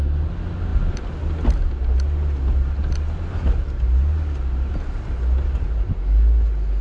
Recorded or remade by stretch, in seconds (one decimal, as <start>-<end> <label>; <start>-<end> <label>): 0.0-6.8 recorded